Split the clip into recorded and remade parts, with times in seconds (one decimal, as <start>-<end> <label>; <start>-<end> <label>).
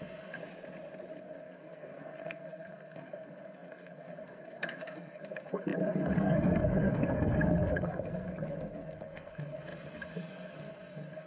0.0-0.4 remade; 0.4-1.2 recorded; 1.2-11.3 remade